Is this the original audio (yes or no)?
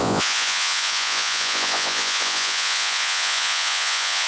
no